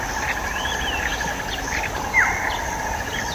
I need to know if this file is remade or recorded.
recorded